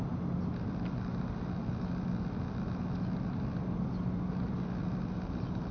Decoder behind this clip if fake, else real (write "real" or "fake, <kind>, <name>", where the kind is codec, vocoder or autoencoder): real